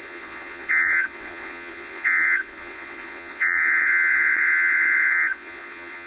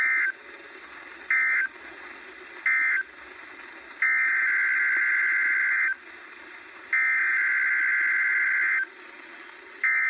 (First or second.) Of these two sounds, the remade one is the first